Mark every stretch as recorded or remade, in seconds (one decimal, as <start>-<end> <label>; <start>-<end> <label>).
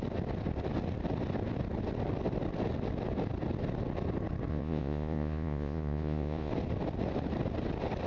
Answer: 0.0-4.5 recorded; 4.5-6.5 remade; 6.5-8.1 recorded